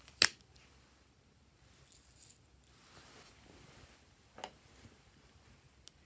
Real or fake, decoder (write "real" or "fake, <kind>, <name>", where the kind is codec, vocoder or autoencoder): real